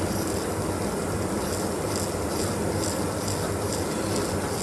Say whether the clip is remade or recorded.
recorded